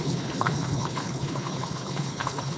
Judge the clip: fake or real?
fake